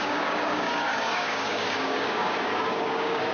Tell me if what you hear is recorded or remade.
remade